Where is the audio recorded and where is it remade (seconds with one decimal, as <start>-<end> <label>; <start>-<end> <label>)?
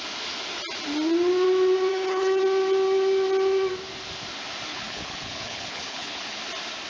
0.0-1.9 recorded; 1.9-2.4 remade; 2.4-4.7 recorded; 4.7-6.4 remade; 6.4-6.9 recorded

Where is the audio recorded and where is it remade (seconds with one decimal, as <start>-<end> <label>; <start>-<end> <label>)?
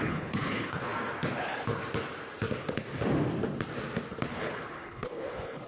0.0-0.9 remade; 0.9-4.3 recorded; 4.3-5.7 remade